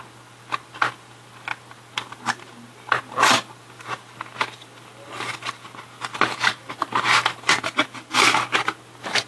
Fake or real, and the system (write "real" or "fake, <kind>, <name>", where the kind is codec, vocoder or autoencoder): real